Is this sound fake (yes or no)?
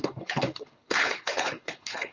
yes